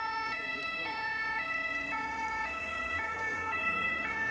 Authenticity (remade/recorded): remade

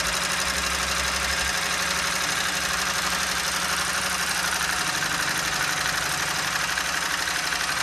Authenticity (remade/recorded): recorded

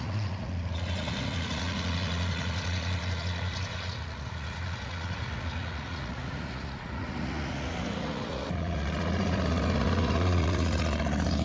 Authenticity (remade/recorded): remade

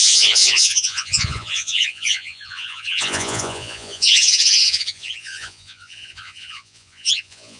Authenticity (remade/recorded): remade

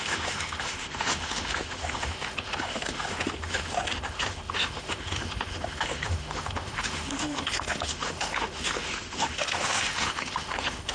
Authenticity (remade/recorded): remade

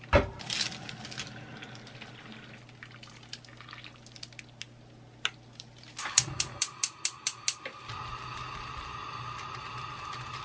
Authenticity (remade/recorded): recorded